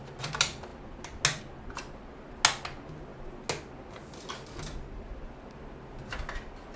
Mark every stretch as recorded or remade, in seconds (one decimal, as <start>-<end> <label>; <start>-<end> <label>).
0.0-6.8 recorded